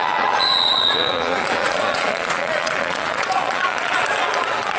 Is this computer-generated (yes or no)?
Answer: yes